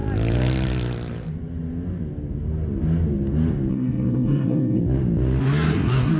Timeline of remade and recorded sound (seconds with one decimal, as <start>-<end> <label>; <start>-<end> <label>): 0.0-3.7 recorded; 3.7-4.8 remade; 4.8-5.4 recorded; 5.4-6.2 remade